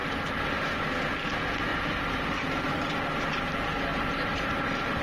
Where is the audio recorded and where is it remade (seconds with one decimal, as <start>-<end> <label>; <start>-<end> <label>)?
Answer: 0.0-1.0 remade; 1.0-1.7 recorded; 1.7-5.0 remade